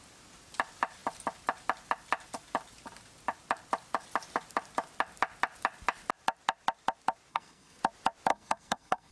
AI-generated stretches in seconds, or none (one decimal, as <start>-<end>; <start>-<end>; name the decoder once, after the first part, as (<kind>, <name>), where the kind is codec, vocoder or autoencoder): 7.3-7.8 (codec, SNAC); 8.3-9.1